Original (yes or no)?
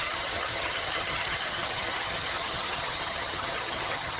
no